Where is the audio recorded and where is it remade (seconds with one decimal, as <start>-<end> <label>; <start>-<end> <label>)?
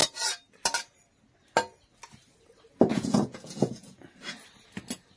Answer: 0.0-2.9 recorded; 2.9-4.0 remade; 4.0-5.2 recorded